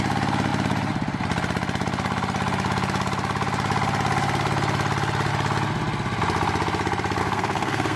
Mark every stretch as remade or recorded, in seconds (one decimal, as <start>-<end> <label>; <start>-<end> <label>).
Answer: 0.0-7.2 recorded; 7.2-8.0 remade